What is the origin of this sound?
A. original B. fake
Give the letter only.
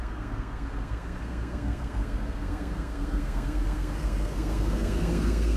B